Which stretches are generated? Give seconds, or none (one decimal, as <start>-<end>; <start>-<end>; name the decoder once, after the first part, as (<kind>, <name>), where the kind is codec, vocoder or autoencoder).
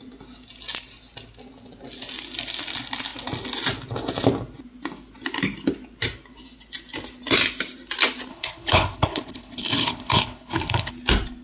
8.3-10.9 (codec, HILCodec)